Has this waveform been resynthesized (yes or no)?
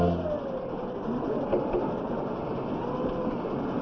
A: no